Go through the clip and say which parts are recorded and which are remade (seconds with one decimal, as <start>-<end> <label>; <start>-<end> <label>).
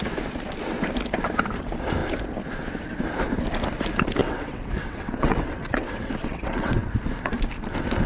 0.0-4.2 recorded; 4.2-6.9 remade; 6.9-8.1 recorded